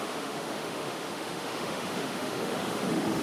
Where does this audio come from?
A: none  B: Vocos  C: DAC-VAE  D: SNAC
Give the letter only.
C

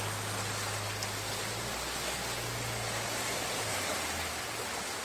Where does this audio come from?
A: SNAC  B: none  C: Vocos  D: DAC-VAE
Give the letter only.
B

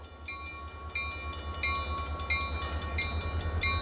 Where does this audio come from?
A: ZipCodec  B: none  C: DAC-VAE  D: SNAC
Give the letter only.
B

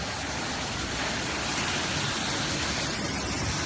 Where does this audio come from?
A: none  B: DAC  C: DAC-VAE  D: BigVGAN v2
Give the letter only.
A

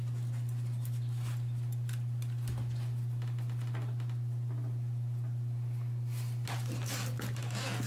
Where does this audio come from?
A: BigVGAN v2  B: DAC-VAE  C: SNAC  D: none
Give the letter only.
D